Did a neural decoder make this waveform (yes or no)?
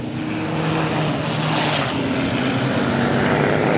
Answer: no